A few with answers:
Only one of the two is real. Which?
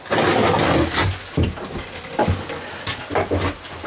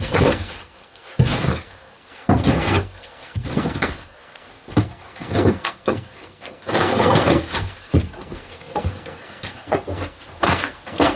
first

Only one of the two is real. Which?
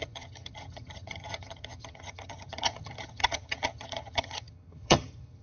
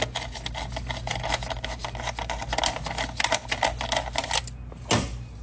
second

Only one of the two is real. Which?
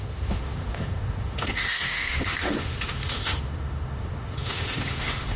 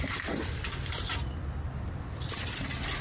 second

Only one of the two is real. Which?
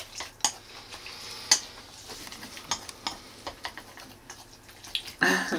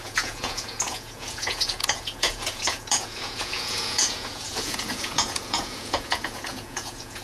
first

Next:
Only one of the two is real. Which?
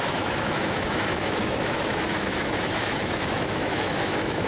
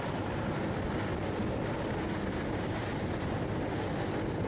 second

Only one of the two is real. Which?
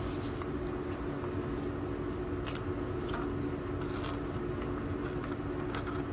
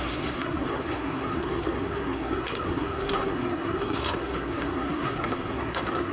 first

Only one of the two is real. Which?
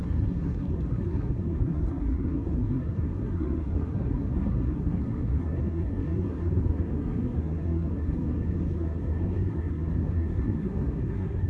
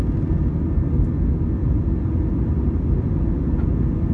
second